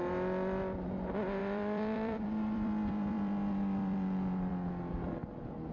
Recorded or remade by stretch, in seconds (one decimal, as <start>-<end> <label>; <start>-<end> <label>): 0.0-1.4 recorded; 1.4-4.5 remade; 4.5-5.7 recorded

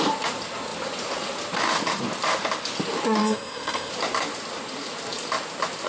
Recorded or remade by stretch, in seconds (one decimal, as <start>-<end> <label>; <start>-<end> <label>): 0.0-3.2 recorded; 3.2-3.9 remade; 3.9-5.9 recorded